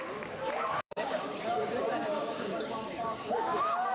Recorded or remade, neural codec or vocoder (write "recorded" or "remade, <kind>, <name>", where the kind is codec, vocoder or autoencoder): remade, codec, DAC